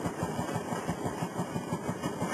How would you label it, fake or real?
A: fake